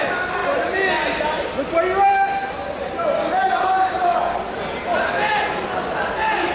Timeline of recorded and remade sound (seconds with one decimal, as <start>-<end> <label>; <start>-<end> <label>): 0.0-6.5 recorded